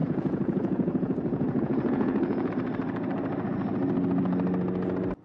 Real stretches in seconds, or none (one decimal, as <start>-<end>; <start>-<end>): 2.5-5.2